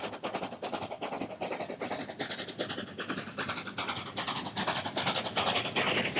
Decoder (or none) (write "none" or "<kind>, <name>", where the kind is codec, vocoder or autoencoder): none